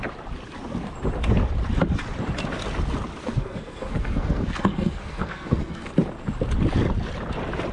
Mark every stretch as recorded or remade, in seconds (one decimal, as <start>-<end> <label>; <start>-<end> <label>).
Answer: 0.0-3.2 recorded; 3.2-5.9 remade; 5.9-7.7 recorded